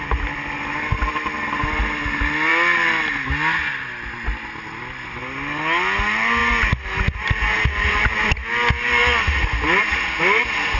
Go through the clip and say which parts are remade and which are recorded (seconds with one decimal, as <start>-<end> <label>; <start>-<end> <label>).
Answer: 0.0-10.8 recorded

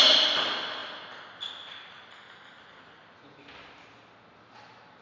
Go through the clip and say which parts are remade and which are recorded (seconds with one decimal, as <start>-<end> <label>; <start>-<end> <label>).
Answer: 0.0-5.0 recorded

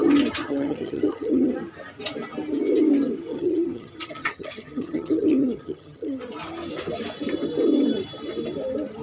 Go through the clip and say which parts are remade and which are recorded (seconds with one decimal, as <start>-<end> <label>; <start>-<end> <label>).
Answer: 0.0-0.4 recorded; 0.4-1.5 remade; 1.5-3.3 recorded; 3.3-6.2 remade; 6.2-9.0 recorded